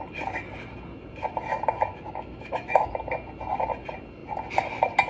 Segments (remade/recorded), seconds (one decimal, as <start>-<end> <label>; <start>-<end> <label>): 0.0-1.9 recorded; 1.9-2.9 remade; 2.9-5.1 recorded